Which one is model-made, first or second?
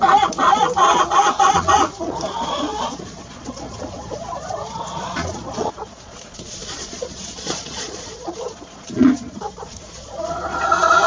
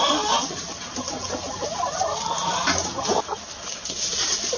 first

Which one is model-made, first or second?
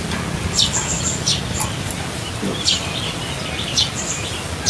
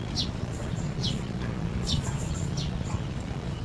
second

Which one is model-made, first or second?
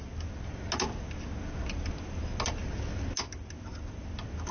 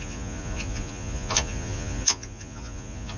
second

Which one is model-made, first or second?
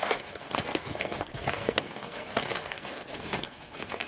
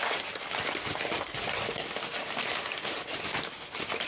first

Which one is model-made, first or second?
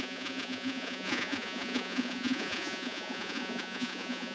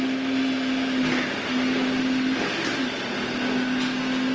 first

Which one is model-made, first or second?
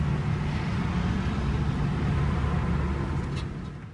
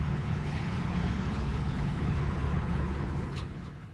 second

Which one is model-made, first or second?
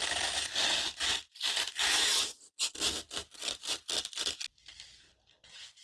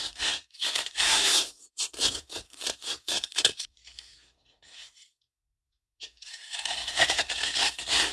second